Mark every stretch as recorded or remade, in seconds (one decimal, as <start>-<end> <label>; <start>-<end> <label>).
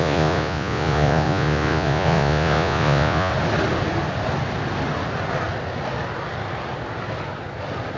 0.0-3.3 remade; 3.3-8.0 recorded